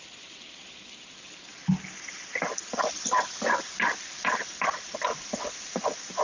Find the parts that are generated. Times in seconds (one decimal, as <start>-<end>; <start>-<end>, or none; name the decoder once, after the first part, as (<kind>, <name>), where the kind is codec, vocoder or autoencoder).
none

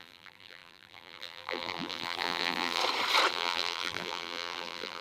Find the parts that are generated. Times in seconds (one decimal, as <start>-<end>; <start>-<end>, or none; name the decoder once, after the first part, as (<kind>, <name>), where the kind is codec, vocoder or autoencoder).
0.0-2.8 (vocoder, BigVGAN v2); 3.3-5.0

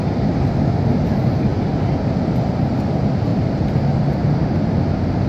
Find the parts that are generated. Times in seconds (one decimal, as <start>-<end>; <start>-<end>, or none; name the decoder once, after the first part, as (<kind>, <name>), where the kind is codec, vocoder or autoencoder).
1.5-2.3 (vocoder, BigVGAN v2); 3.3-4.6

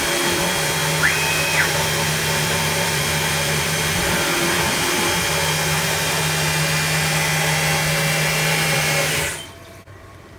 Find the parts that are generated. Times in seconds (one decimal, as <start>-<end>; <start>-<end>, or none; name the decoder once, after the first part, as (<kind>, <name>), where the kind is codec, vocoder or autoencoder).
0.0-0.8 (vocoder, BigVGAN v2); 2.4-5.3; 8.5-10.4

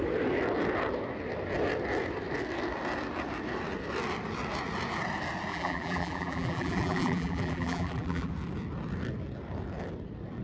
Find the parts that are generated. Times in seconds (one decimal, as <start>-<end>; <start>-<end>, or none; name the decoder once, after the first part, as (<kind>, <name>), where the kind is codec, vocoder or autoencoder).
5.5-8.3 (vocoder, BigVGAN v2)

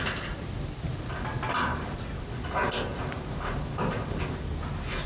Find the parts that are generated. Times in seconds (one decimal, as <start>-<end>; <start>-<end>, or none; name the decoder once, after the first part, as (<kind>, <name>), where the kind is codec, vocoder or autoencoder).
1.7-2.3 (vocoder, BigVGAN v2); 2.9-4.2

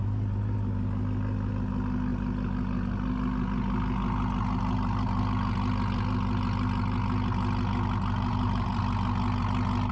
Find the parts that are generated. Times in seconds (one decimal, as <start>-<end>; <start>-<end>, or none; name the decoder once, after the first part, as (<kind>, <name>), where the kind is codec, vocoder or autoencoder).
8.3-8.8 (vocoder, BigVGAN v2)